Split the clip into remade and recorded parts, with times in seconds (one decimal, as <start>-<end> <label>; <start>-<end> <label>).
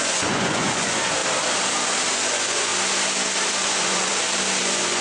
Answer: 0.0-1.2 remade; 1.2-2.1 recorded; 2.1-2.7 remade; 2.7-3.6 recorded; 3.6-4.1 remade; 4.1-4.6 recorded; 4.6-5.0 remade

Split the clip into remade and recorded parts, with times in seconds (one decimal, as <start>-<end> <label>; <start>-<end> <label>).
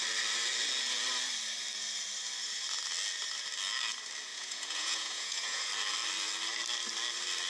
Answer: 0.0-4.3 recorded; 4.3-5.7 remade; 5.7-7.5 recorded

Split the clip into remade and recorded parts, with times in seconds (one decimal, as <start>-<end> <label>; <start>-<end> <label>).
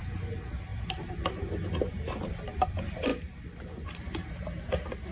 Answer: 0.0-5.1 recorded